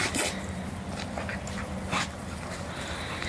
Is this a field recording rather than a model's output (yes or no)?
yes